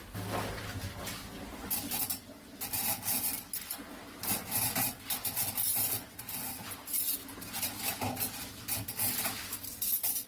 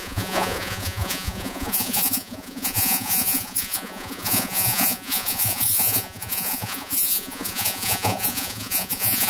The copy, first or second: second